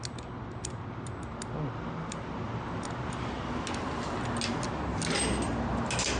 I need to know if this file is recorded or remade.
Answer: recorded